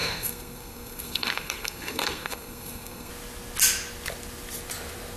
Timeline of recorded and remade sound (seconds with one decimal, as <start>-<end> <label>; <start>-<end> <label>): 0.0-3.1 remade; 3.1-5.2 recorded